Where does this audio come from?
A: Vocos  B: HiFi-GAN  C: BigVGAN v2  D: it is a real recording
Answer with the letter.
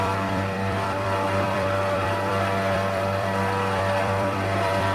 C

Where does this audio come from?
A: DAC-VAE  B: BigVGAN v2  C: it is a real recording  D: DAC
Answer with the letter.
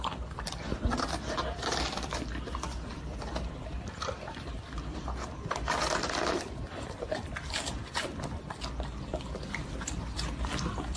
B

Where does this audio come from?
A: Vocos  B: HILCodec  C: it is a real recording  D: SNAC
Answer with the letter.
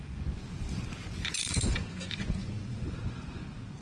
A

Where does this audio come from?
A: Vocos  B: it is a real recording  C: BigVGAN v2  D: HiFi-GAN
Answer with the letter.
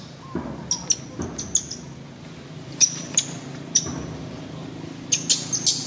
B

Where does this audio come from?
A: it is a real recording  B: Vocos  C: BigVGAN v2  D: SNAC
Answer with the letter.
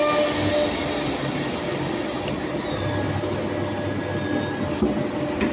A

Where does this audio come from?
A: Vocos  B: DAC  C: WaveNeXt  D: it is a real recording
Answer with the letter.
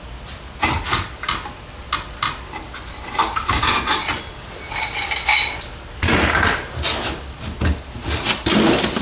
D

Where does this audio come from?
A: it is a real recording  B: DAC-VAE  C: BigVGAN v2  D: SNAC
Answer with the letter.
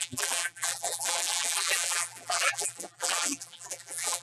C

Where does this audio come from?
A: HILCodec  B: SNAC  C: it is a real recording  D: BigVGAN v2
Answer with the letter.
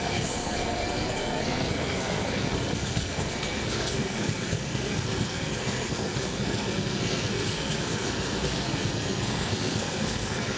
B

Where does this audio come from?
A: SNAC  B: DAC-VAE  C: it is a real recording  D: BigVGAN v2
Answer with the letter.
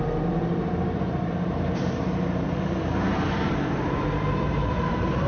D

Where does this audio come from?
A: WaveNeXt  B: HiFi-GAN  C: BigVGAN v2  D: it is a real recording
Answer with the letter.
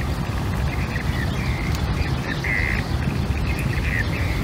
D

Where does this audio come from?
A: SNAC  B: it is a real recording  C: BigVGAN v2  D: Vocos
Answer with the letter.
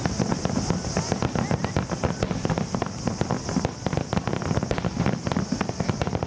B